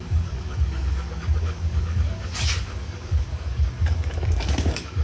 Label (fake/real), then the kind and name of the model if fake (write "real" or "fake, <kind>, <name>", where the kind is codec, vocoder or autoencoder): fake, codec, DAC